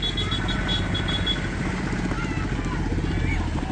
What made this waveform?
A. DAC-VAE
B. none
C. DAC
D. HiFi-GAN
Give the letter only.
B